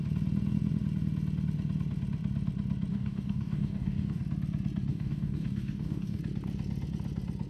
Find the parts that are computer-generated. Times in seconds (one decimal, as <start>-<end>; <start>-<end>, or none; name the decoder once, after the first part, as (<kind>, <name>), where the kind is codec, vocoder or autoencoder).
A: 2.9-4.2 (codec, DAC); 4.9-6.2